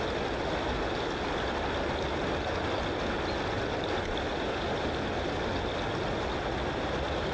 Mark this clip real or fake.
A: real